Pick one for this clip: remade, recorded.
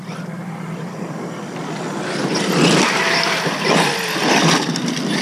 recorded